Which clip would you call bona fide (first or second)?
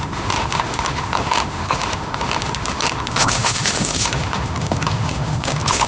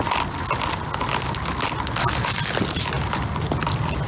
second